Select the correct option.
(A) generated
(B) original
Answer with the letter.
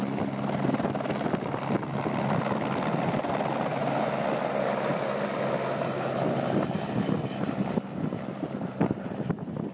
B